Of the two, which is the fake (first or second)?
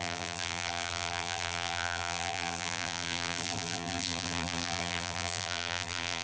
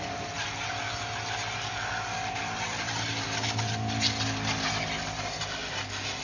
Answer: first